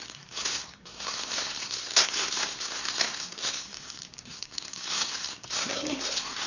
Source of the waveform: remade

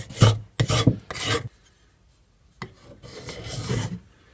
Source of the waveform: recorded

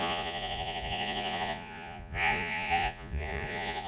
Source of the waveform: remade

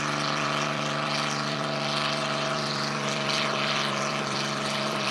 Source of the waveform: remade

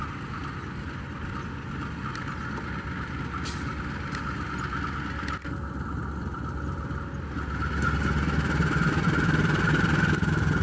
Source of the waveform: recorded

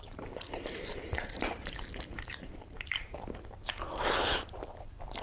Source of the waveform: remade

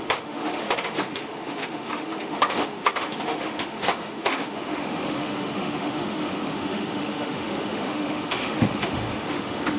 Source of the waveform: remade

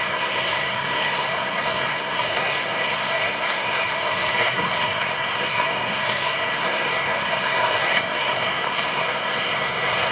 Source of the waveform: remade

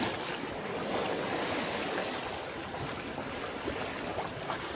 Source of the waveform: recorded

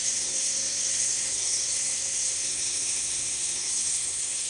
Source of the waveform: remade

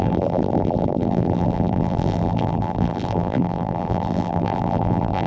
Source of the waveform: remade